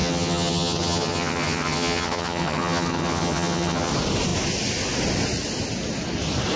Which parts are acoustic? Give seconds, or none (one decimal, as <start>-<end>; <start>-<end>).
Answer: 3.9-6.6